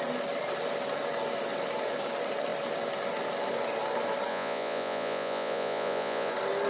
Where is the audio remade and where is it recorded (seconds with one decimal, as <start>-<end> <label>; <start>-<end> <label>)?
0.0-4.3 recorded; 4.3-6.3 remade; 6.3-6.7 recorded